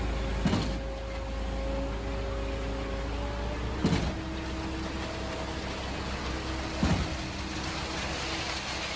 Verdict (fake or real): real